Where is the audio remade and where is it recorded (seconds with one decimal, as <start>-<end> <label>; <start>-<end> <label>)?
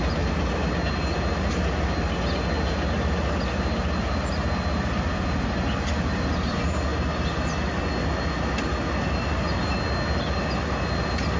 0.0-11.4 recorded